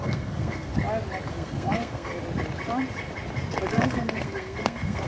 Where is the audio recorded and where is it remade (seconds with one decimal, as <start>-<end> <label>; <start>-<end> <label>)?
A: 0.0-0.7 remade; 0.7-1.3 recorded; 1.3-2.1 remade; 2.1-3.7 recorded; 3.7-5.1 remade